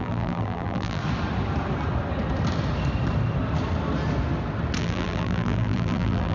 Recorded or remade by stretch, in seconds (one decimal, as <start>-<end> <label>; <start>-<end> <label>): 0.0-1.0 remade; 1.0-4.8 recorded; 4.8-6.3 remade